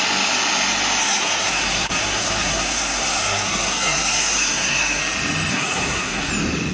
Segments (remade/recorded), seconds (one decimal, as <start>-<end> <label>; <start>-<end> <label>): 0.0-1.0 recorded; 1.0-5.0 remade; 5.0-5.5 recorded; 5.5-6.3 remade; 6.3-6.7 recorded